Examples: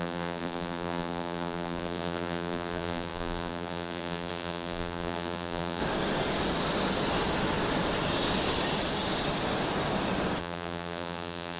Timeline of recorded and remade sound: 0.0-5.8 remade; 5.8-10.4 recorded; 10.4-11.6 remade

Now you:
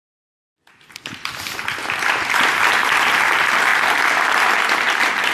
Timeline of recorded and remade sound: 0.0-2.8 recorded; 2.8-3.7 remade; 3.7-4.3 recorded; 4.3-5.3 remade

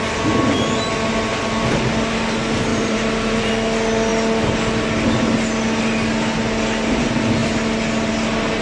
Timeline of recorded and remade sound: 0.0-2.7 recorded; 2.7-3.5 remade; 3.5-8.6 recorded